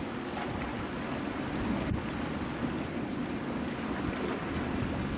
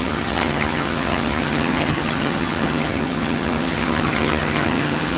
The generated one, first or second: second